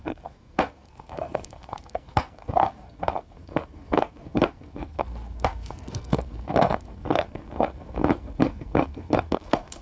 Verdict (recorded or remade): remade